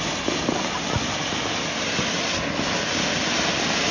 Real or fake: real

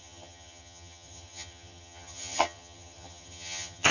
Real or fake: fake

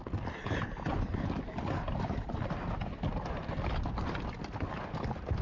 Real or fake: real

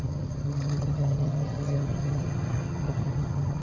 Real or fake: fake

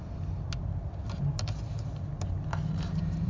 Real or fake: real